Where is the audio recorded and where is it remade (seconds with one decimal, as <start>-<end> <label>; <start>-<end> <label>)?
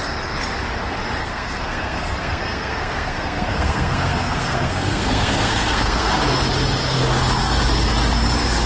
0.0-1.2 recorded; 1.2-6.1 remade; 6.1-8.7 recorded